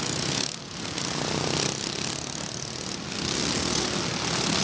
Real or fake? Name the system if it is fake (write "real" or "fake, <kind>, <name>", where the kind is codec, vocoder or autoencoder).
real